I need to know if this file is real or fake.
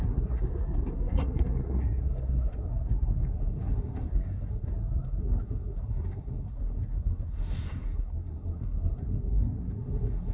fake